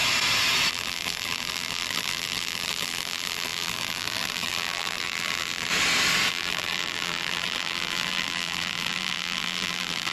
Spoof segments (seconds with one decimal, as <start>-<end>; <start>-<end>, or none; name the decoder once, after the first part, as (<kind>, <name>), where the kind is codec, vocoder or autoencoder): 0.7-5.7 (vocoder, BigVGAN v2); 6.3-10.1